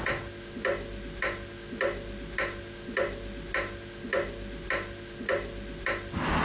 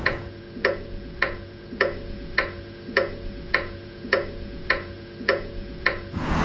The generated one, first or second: second